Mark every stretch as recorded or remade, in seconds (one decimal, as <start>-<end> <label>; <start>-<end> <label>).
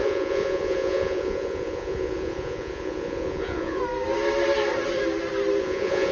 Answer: 0.0-3.8 remade; 3.8-5.6 recorded; 5.6-6.1 remade